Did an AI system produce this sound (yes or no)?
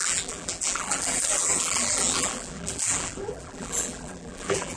yes